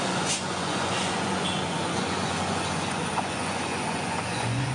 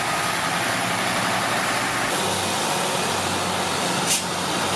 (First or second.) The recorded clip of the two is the second